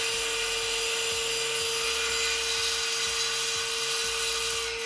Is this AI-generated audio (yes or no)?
no